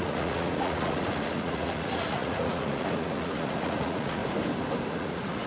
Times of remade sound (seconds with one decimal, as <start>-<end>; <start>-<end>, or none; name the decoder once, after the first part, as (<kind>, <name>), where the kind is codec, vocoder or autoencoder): 0.0-4.2 (vocoder, Vocos); 4.9-5.5